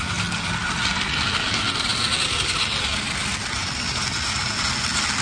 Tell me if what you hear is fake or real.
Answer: real